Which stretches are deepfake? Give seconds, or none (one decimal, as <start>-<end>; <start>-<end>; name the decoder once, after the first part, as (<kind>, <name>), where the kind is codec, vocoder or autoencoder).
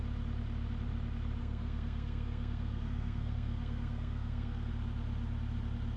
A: 1.4-4.7 (codec, SNAC)